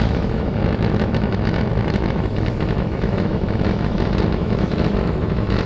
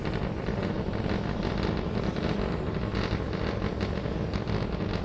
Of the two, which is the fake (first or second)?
first